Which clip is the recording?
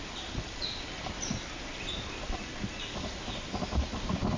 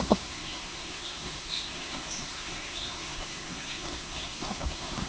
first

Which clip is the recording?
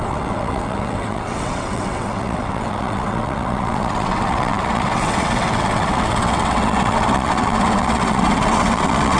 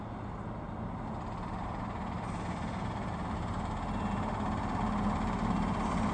second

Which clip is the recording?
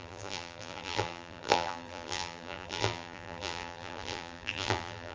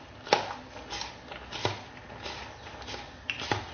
second